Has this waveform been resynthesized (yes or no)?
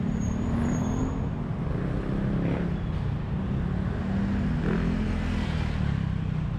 no